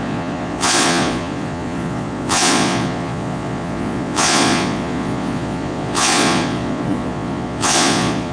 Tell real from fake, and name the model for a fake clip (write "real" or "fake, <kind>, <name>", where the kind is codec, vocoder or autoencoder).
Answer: fake, vocoder, Vocos